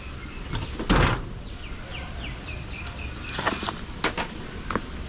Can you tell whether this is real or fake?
real